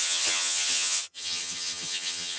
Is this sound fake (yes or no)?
yes